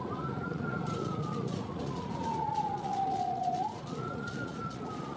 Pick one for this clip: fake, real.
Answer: fake